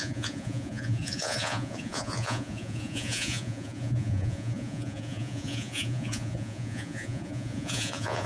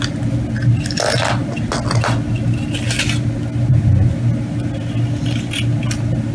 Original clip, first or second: second